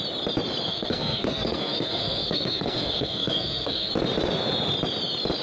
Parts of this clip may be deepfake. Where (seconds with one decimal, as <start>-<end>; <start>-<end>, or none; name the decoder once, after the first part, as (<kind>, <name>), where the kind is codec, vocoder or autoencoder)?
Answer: 0.7-3.9 (codec, SNAC)